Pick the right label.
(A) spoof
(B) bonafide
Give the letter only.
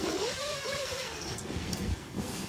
A